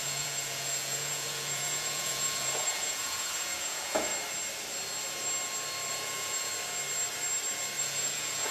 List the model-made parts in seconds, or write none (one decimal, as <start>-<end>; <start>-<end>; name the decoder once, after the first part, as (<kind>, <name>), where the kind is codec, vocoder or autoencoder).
0.0-4.1 (vocoder, Vocos); 5.9-6.5; 7.8-8.5